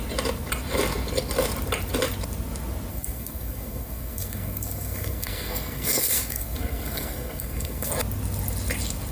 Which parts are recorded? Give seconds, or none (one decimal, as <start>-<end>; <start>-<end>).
0.0-2.9; 7.9-9.1